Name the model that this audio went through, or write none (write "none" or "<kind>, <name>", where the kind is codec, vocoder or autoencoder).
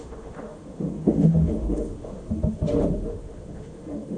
autoencoder, DAC-VAE